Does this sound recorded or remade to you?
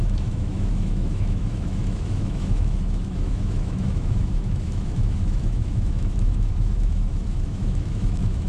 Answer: remade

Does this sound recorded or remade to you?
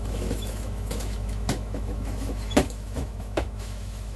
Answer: remade